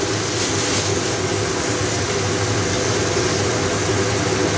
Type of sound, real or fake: real